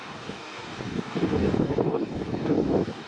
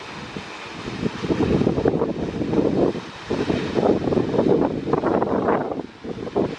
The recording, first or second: second